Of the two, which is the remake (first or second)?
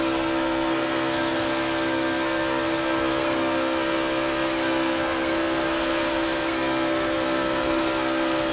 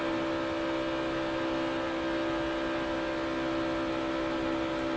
first